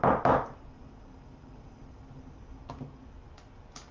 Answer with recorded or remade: recorded